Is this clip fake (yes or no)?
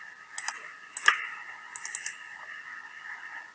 no